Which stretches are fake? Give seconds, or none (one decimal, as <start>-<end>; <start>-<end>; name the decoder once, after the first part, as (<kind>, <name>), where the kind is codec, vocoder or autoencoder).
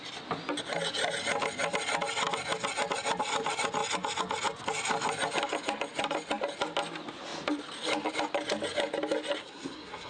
9.4-10.1 (codec, SNAC)